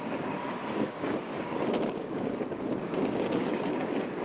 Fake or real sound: fake